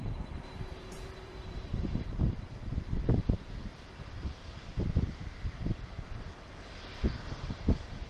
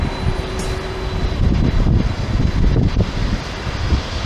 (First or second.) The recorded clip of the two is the second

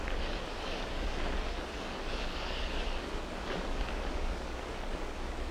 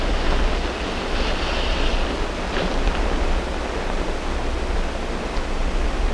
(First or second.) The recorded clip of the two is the second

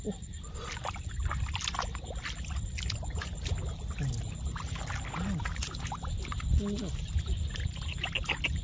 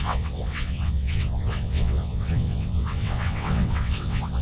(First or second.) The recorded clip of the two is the first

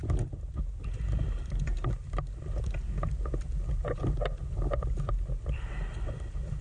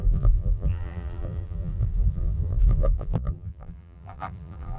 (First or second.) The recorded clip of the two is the first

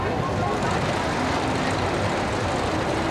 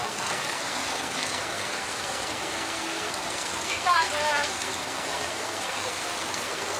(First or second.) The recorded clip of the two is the first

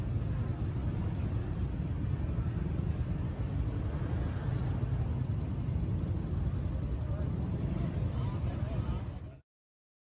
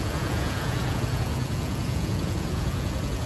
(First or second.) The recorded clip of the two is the first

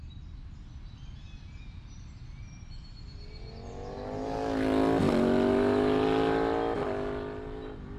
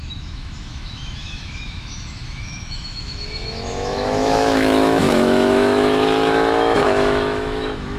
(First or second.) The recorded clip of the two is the first